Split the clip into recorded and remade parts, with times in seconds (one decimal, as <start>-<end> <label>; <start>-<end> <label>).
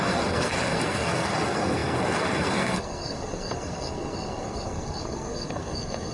0.0-6.1 remade